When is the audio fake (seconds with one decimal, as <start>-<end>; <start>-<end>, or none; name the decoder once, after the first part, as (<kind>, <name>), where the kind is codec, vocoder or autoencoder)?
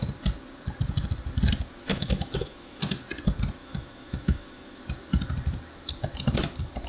1.9-2.8 (autoencoder, DAC-VAE); 3.6-4.8